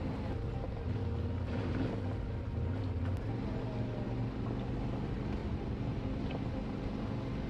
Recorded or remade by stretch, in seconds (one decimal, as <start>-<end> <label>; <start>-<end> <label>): 0.0-5.4 recorded; 5.4-6.0 remade; 6.0-7.5 recorded